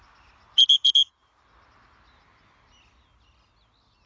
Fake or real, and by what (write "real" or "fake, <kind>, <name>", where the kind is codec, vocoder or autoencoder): real